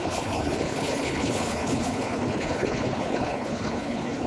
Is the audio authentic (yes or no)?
no